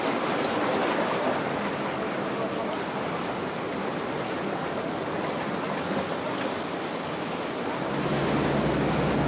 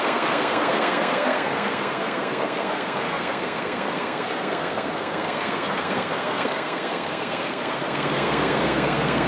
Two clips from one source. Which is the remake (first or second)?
second